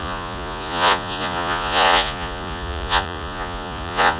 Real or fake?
fake